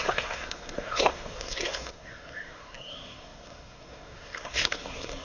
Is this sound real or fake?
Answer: fake